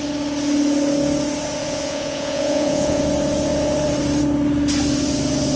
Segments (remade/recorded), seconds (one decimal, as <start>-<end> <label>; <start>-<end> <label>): 0.0-1.6 recorded; 1.6-3.0 remade; 3.0-5.6 recorded